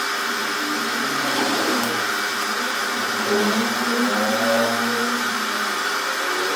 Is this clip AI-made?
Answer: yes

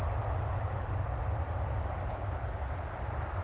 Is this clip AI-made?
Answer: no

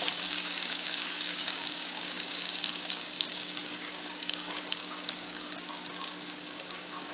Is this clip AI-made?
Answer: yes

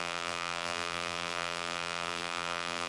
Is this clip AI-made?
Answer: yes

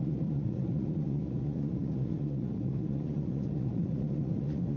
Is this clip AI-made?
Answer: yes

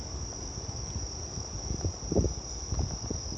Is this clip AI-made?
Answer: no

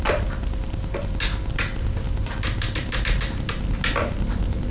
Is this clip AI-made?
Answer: no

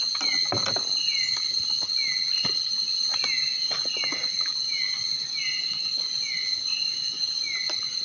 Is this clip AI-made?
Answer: no